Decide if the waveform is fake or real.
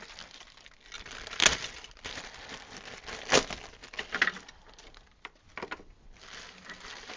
real